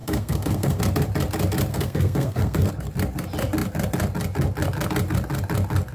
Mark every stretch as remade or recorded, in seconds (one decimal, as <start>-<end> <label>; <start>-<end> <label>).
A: 0.0-0.8 remade; 0.8-1.7 recorded; 1.7-2.7 remade; 2.7-5.9 recorded